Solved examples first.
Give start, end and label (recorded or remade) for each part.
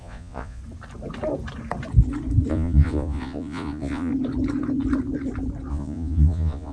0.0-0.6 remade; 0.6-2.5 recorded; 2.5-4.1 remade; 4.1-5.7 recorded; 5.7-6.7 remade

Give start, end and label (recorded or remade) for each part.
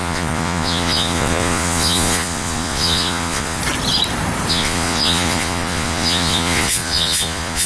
0.0-3.6 remade; 3.6-4.5 recorded; 4.5-7.7 remade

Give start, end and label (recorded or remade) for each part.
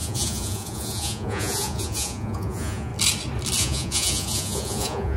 0.0-2.9 remade; 2.9-3.6 recorded; 3.6-5.2 remade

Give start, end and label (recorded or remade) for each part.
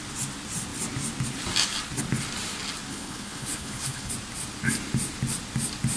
0.0-2.9 recorded; 2.9-4.1 remade; 4.1-6.0 recorded